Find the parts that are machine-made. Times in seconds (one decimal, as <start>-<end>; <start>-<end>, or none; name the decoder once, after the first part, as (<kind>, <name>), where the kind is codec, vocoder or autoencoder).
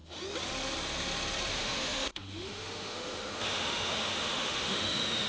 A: 1.5-5.3 (autoencoder, DAC-VAE)